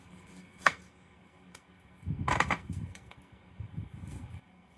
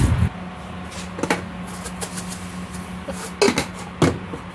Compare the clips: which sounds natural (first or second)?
second